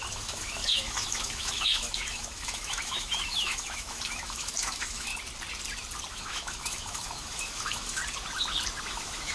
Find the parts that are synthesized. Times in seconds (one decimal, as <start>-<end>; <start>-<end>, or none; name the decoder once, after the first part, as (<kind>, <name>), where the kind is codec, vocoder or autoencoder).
0.0-5.1 (autoencoder, DAC-VAE); 6.1-8.0; 8.9-9.3